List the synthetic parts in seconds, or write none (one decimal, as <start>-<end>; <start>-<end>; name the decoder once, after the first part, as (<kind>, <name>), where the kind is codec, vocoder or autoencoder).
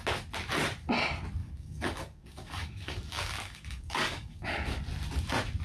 1.4-4.8 (codec, DAC)